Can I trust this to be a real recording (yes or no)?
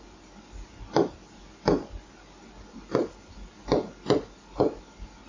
yes